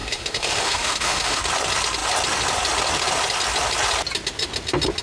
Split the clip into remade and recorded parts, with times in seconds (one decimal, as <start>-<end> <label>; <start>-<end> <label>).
0.0-1.4 remade; 1.4-5.0 recorded